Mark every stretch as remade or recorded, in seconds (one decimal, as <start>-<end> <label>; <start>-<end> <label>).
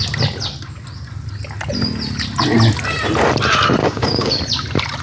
0.0-3.8 recorded; 3.8-4.3 remade; 4.3-5.0 recorded